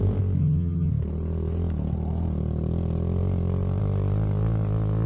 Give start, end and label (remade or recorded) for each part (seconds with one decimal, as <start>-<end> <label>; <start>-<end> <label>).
0.0-0.4 recorded; 0.4-0.9 remade; 0.9-5.1 recorded